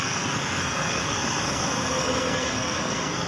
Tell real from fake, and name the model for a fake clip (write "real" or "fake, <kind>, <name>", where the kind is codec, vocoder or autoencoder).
fake, codec, SNAC